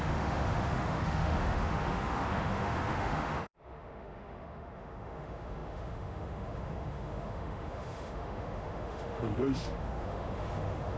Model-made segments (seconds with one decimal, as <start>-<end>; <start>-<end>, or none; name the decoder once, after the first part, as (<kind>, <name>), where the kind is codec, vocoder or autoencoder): 0.0-11.0 (autoencoder, DAC-VAE)